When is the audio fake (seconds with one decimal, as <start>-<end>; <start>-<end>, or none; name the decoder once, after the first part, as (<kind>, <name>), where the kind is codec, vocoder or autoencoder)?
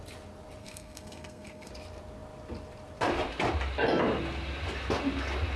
0.6-1.7 (codec, SNAC)